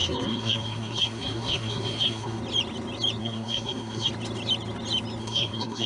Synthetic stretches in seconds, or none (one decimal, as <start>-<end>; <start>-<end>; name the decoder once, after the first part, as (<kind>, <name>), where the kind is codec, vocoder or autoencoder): 0.0-2.4 (codec, SNAC); 3.2-4.1; 5.2-5.9